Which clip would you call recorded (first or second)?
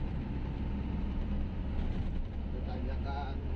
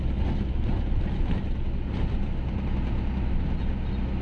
second